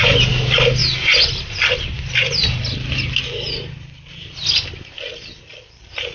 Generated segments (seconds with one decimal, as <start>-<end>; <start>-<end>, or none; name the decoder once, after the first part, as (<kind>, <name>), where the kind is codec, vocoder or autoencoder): none

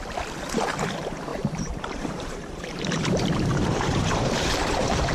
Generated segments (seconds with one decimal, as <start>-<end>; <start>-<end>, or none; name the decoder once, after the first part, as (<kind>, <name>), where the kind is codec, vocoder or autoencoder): 1.3-3.0 (vocoder, BigVGAN v2); 3.5-5.1

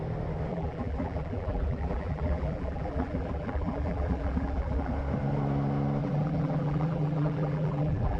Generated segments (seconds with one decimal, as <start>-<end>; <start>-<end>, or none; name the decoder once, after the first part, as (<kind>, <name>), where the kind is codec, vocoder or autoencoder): 0.5-4.9 (vocoder, BigVGAN v2); 6.0-8.2

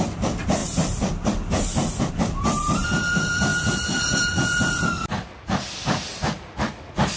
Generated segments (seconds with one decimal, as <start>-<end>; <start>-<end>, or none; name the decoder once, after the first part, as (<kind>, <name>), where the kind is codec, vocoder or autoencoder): 0.0-0.6 (vocoder, BigVGAN v2); 2.1-7.2

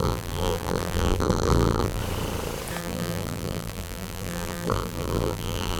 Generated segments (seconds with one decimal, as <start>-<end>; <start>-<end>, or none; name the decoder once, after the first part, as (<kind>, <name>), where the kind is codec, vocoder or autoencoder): 0.0-2.0 (vocoder, BigVGAN v2); 2.8-5.8

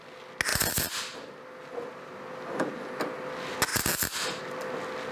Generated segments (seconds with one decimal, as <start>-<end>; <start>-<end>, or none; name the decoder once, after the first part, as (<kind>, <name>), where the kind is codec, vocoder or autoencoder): 0.5-2.7 (vocoder, BigVGAN v2)

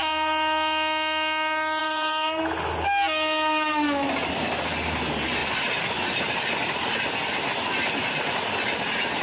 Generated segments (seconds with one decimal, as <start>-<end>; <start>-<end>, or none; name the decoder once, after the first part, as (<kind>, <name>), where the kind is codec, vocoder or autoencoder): 1.8-2.4 (vocoder, BigVGAN v2)